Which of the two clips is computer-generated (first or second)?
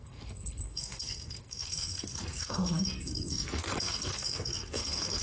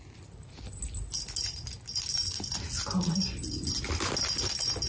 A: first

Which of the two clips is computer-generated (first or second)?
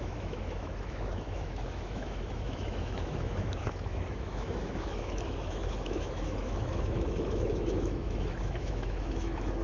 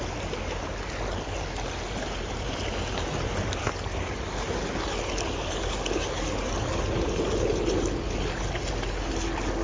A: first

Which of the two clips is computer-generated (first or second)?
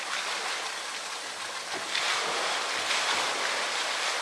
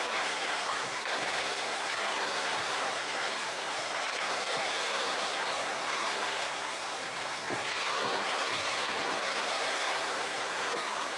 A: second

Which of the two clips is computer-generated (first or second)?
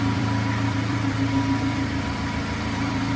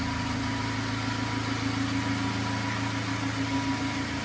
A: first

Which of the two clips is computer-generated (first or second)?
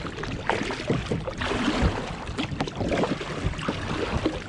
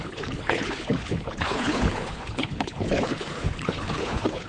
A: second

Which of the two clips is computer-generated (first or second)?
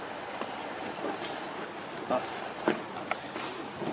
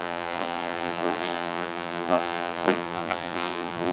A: second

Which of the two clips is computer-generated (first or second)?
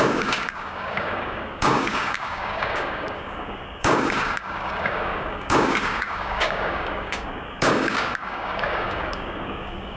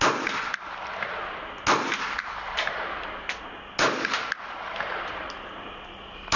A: first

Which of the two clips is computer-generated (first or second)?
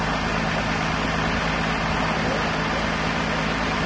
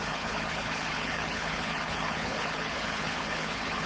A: second